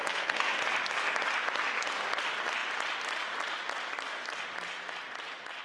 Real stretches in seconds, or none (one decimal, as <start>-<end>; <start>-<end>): 0.6-5.6